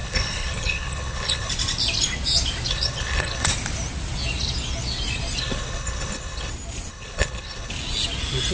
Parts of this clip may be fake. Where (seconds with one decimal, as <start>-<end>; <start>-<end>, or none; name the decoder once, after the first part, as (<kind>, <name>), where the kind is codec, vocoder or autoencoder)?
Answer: 0.0-1.5 (codec, HILCodec); 2.7-3.5; 5.4-6.5; 6.9-7.7